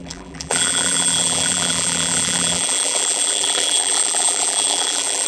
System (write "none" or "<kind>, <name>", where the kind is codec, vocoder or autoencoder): vocoder, BigVGAN v2